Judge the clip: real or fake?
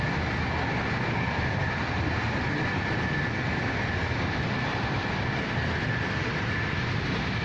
real